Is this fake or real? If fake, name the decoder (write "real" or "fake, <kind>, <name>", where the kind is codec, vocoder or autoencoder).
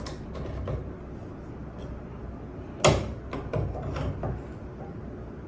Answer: real